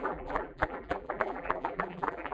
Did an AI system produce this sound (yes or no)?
yes